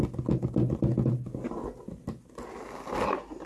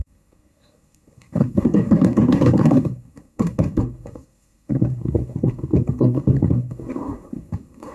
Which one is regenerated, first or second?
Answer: second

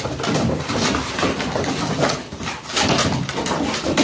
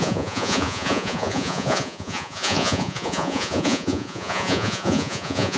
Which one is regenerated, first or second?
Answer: second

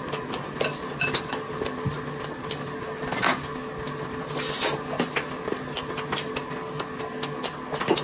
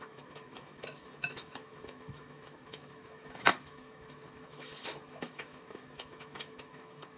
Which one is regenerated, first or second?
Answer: second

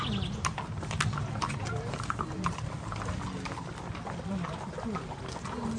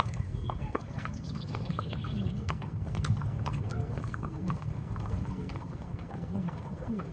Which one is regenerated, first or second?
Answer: second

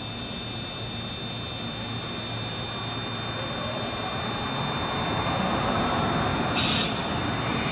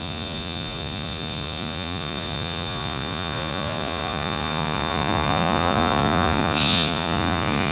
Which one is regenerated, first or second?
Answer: second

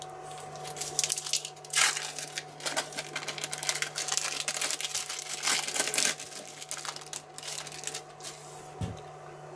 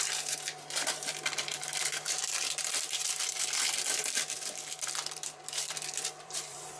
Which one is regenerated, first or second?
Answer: second